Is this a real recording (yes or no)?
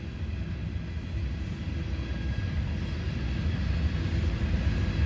yes